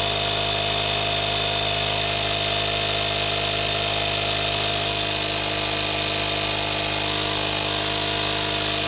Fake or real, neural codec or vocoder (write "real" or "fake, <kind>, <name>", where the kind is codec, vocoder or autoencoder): real